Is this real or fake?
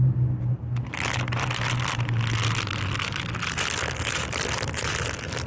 real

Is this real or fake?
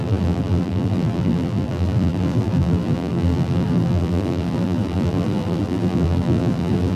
fake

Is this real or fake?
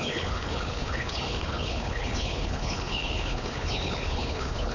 fake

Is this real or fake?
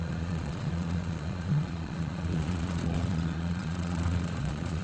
fake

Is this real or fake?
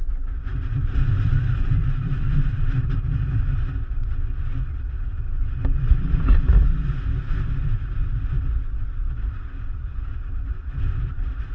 real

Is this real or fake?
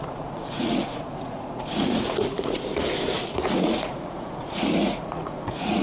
fake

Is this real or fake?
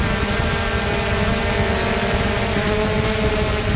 real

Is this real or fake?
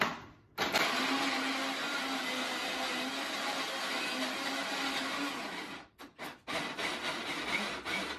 real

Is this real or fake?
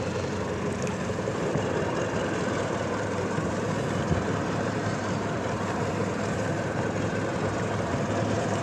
fake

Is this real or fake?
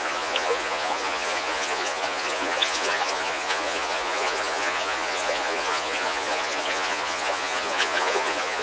fake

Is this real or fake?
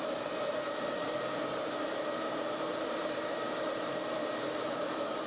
fake